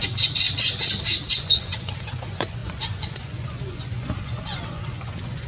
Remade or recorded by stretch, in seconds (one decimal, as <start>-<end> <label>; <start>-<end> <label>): 0.0-1.3 recorded; 1.3-5.5 remade